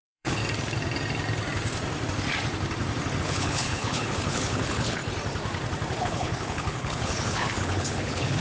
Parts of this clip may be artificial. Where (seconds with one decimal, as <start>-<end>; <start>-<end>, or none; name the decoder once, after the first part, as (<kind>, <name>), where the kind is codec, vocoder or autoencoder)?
0.0-0.4 (codec, HILCodec); 3.2-5.0; 6.0-8.4